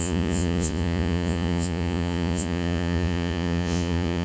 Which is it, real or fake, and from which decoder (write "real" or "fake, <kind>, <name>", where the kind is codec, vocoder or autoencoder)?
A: fake, vocoder, Vocos